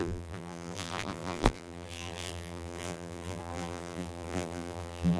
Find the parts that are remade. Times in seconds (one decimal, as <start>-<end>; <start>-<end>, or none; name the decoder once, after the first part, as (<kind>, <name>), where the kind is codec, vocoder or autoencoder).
0.0-5.2 (vocoder, BigVGAN v2)